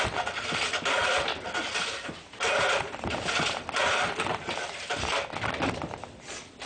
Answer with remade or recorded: remade